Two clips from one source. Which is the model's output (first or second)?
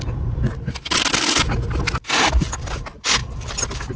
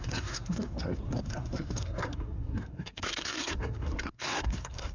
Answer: second